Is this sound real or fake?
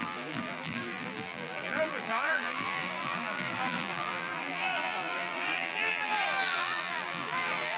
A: fake